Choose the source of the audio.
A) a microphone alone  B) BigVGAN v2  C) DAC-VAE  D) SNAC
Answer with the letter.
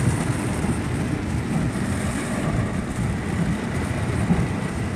A